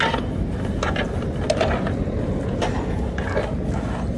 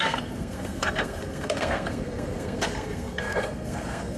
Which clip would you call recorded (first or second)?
first